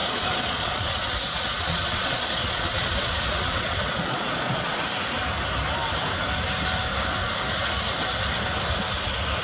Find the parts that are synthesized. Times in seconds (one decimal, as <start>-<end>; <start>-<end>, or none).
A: 0.0-4.8